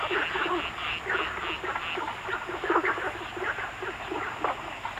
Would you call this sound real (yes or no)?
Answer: yes